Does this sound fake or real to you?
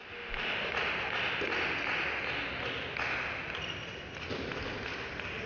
real